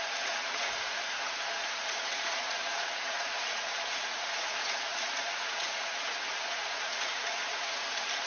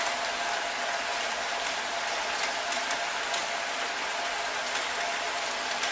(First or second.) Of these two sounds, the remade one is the first